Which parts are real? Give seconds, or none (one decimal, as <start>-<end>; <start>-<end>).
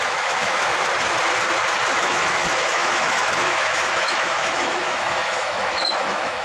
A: 0.7-2.0